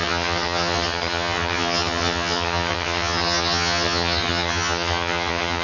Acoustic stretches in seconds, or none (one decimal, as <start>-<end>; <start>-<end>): none